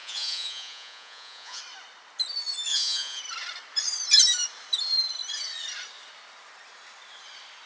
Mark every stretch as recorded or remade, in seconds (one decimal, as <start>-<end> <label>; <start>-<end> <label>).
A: 0.0-1.6 remade; 1.6-2.7 recorded; 2.7-3.2 remade; 3.2-7.7 recorded